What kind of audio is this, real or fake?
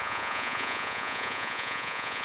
fake